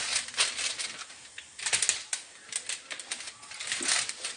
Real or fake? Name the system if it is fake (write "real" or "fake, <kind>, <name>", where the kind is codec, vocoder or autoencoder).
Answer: real